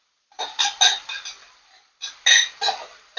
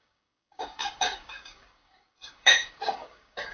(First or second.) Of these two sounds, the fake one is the second